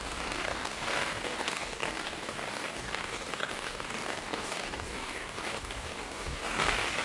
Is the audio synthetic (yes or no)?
yes